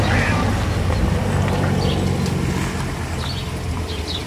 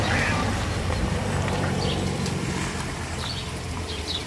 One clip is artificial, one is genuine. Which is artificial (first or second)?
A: second